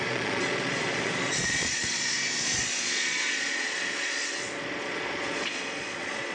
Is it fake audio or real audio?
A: fake